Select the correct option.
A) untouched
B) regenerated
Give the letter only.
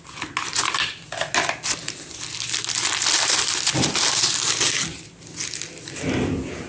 A